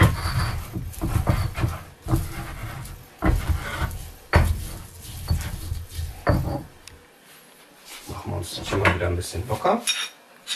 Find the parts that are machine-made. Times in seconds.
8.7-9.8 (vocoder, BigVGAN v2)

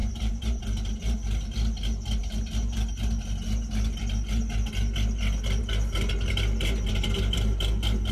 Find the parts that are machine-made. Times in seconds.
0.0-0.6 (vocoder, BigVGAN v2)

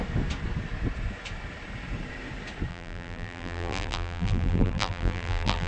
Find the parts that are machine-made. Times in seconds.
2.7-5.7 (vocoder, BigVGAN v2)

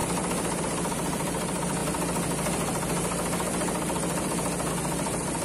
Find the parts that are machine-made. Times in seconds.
0.6-1.8 (vocoder, BigVGAN v2); 4.7-5.4

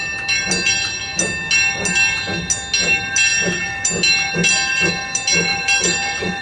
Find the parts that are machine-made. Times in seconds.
5.5-6.4 (vocoder, BigVGAN v2)